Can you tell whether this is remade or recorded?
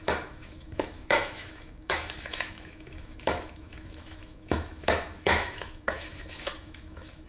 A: remade